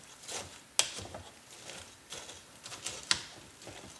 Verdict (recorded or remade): recorded